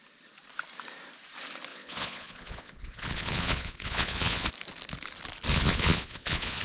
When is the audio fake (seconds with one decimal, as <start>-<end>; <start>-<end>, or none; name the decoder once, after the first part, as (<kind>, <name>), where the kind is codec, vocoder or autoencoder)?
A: 1.7-4.5 (vocoder, Vocos); 5.5-6.6